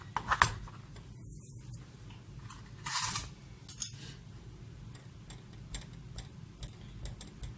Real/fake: real